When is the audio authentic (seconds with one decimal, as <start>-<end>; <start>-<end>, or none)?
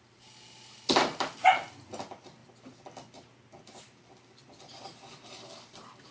2.4-3.1